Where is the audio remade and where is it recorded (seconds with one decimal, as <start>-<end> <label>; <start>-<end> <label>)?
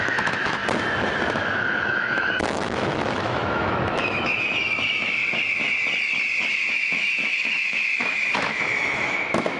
0.0-0.6 remade; 0.6-1.2 recorded; 1.2-5.2 remade; 5.2-6.7 recorded; 6.7-9.6 remade